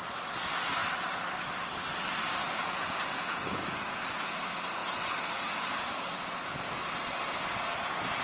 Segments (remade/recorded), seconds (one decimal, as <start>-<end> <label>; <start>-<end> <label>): 0.0-2.4 recorded; 2.4-4.0 remade; 4.0-4.8 recorded; 4.8-6.4 remade; 6.4-8.2 recorded